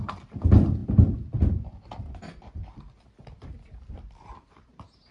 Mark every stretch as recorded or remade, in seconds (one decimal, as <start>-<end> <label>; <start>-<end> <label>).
0.0-5.1 recorded